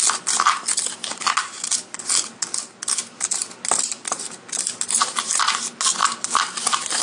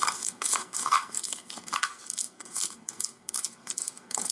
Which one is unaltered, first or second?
first